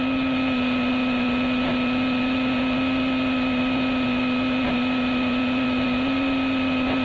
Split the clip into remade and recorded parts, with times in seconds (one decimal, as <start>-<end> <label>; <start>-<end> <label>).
0.0-7.0 recorded